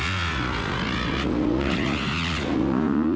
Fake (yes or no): yes